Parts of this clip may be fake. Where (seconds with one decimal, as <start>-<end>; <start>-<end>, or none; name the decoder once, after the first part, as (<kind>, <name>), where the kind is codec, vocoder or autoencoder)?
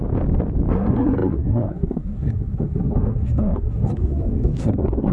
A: 0.7-5.1 (codec, SNAC)